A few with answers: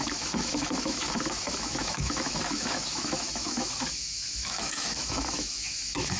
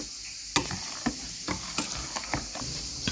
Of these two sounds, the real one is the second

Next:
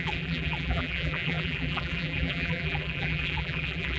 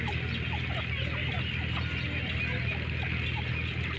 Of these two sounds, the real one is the second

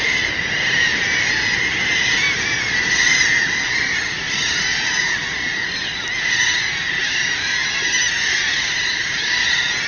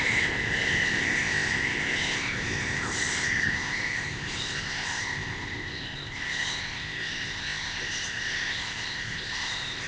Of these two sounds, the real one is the first